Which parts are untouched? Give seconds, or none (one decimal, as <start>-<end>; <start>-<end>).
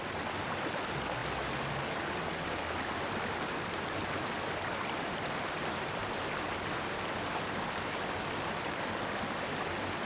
0.0-10.0